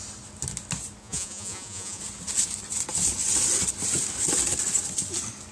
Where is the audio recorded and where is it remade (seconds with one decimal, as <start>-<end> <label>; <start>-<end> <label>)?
0.0-1.0 recorded; 1.0-2.0 remade; 2.0-5.5 recorded